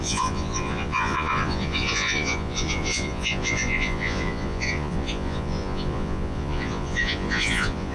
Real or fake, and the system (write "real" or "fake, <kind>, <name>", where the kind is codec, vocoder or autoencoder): fake, vocoder, Vocos